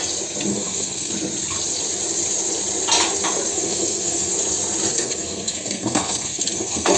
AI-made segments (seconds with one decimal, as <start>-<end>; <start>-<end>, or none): 0.5-1.1; 3.5-4.3; 4.9-7.0